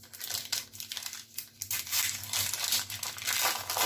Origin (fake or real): real